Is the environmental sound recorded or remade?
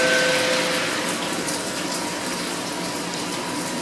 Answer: recorded